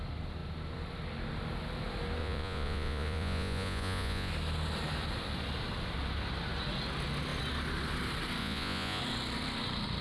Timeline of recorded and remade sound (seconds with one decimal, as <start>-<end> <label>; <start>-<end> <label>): 0.0-2.2 recorded; 2.2-4.3 remade; 4.3-8.4 recorded; 8.4-9.0 remade; 9.0-10.0 recorded